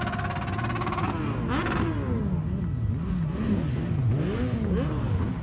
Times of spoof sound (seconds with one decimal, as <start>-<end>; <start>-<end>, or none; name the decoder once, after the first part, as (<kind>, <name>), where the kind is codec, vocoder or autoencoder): none